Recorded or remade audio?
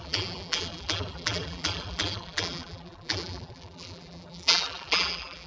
remade